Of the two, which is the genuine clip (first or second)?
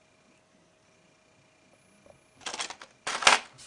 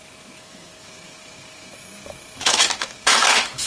first